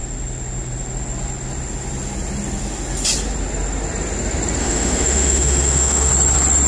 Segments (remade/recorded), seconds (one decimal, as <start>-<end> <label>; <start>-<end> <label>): 0.0-4.6 recorded; 4.6-6.1 remade; 6.1-6.7 recorded